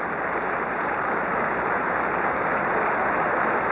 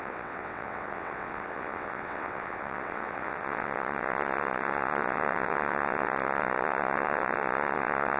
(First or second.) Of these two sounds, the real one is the first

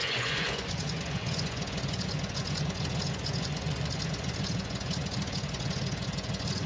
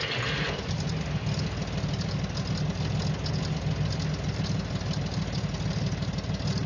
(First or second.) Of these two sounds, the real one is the second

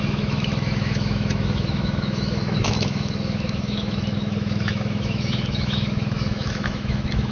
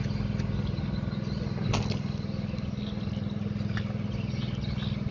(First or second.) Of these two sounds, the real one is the second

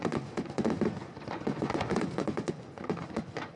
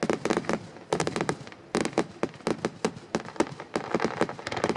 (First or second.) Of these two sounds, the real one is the second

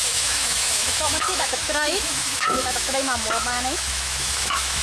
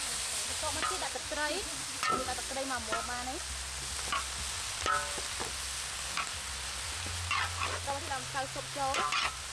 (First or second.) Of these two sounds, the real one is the second